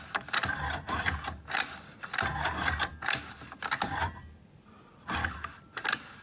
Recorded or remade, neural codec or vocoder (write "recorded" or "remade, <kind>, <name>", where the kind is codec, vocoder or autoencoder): recorded